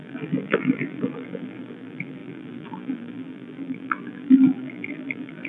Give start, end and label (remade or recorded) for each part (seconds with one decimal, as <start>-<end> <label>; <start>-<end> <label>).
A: 0.0-5.5 remade